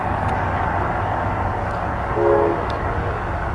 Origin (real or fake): fake